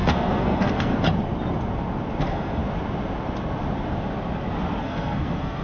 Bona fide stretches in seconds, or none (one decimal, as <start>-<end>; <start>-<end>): 0.9-2.2; 2.6-4.8